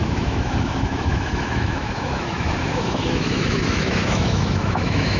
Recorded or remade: remade